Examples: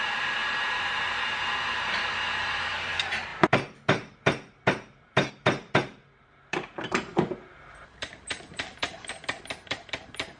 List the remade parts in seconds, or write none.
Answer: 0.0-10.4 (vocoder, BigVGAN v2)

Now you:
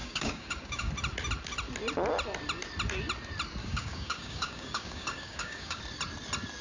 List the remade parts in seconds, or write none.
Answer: 0.0-0.9 (codec, DAC); 3.6-5.8

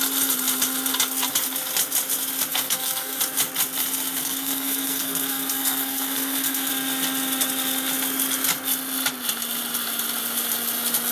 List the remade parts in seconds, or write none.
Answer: 2.5-3.2 (codec, SNAC); 4.2-6.7

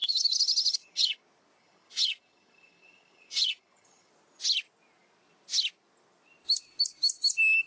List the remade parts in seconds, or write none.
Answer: 0.0-1.2 (vocoder, HiFi-GAN); 1.6-4.1

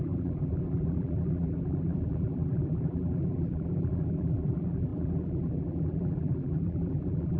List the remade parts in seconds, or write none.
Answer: 0.0-7.4 (vocoder, BigVGAN v2)

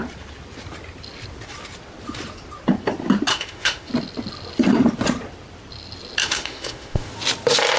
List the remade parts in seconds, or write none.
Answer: 3.3-3.9 (autoencoder, DAC-VAE); 6.2-7.1

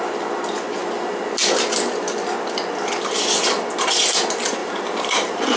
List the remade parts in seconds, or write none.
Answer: 4.6-5.6 (vocoder, BigVGAN v2)